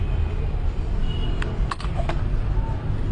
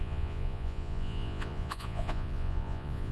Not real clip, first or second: second